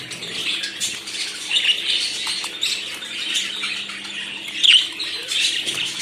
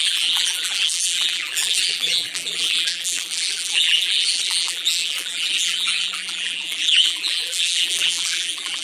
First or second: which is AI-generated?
second